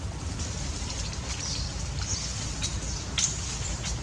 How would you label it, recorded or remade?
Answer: recorded